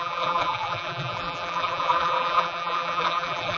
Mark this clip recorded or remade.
remade